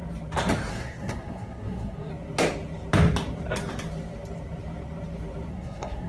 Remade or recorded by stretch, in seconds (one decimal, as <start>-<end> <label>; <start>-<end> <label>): 0.0-0.7 recorded; 0.7-2.1 remade; 2.1-5.5 recorded; 5.5-6.1 remade